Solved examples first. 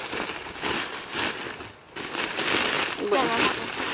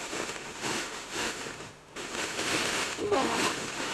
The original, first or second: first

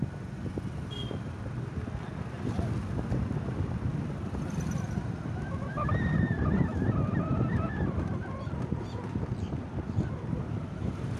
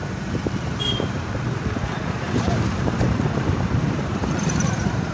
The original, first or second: first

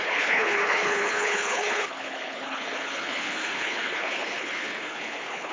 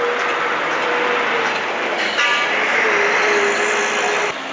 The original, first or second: second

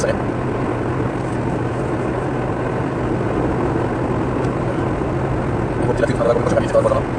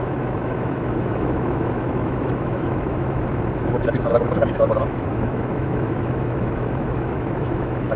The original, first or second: first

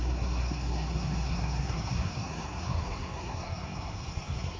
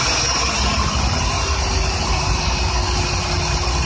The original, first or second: second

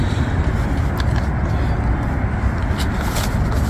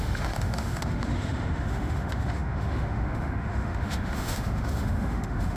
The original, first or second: first